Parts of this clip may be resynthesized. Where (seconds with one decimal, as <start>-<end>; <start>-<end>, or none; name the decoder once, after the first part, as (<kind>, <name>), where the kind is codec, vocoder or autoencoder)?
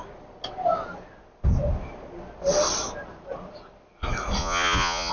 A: 4.4-5.1 (vocoder, Vocos)